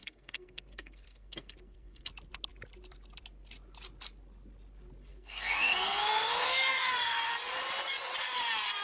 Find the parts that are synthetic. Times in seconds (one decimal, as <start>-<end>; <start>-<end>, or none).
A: 0.0-2.1; 5.1-7.3